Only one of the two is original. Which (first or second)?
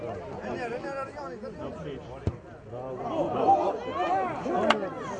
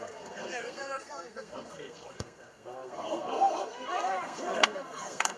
first